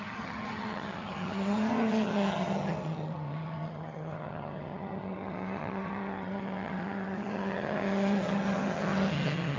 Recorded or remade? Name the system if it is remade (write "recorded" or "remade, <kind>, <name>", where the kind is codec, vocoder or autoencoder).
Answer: remade, vocoder, HiFi-GAN